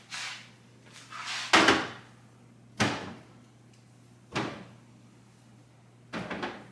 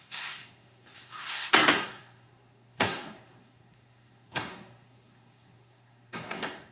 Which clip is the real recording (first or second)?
first